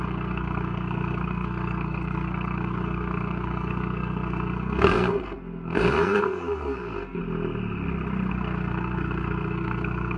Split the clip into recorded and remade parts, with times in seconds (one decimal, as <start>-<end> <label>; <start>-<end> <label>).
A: 0.0-7.2 remade; 7.2-8.3 recorded; 8.3-10.2 remade